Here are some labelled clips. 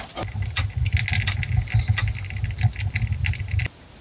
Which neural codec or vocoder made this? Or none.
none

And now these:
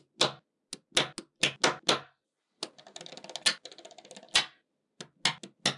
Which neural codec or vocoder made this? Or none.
none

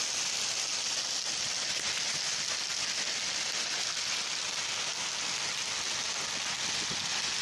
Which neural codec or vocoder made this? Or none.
none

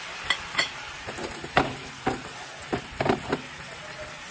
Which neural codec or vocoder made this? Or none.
none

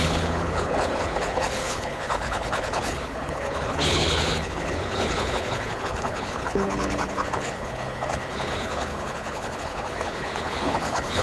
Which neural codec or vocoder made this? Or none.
codec, HILCodec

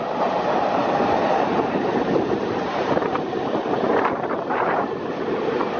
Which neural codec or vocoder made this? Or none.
vocoder, BigVGAN v2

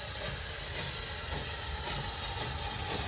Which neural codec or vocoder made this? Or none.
none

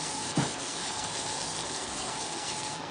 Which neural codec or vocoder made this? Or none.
codec, SNAC